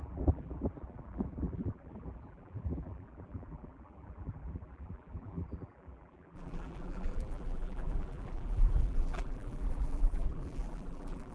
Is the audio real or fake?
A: fake